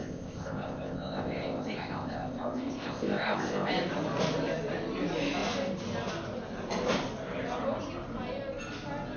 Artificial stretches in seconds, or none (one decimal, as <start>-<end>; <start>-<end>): 0.0-3.7